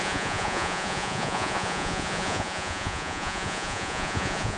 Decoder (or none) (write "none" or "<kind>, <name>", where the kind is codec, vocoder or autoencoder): vocoder, Vocos